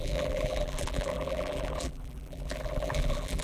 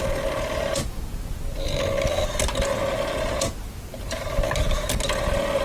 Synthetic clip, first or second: first